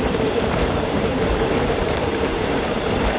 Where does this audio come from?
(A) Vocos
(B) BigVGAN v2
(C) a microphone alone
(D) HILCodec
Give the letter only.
B